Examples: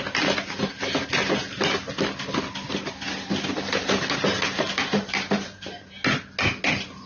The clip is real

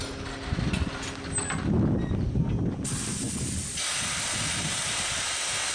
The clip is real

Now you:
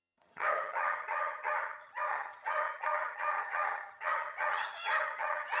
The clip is fake